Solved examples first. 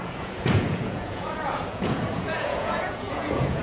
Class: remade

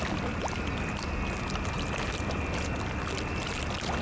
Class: recorded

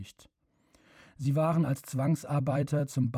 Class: remade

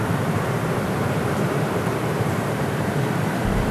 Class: remade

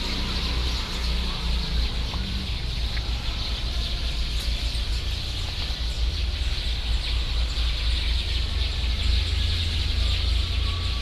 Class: recorded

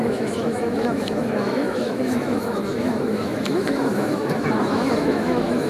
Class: remade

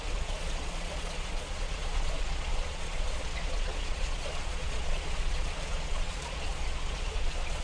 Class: remade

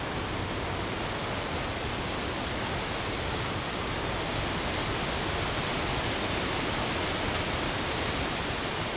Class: recorded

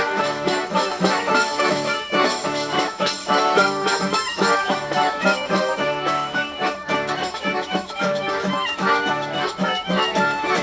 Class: remade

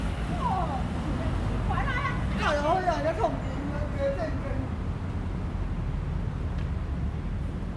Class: recorded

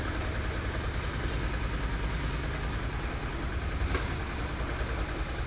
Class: recorded